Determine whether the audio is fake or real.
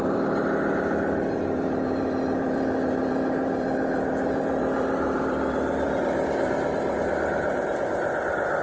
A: fake